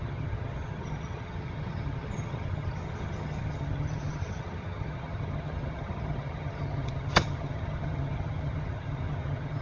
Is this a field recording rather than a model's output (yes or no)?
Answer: no